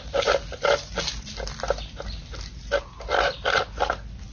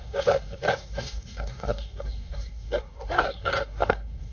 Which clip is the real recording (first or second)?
first